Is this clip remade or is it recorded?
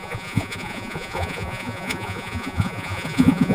remade